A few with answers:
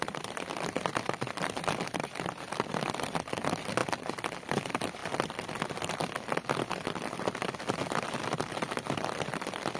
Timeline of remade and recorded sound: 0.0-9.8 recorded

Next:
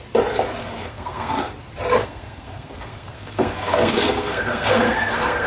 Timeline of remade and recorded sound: 0.0-0.6 recorded; 0.6-1.4 remade; 1.4-2.0 recorded; 2.0-5.5 remade

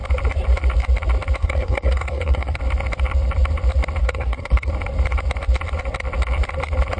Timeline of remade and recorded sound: 0.0-1.4 recorded; 1.4-2.6 remade; 2.6-4.0 recorded; 4.0-4.7 remade; 4.7-7.0 recorded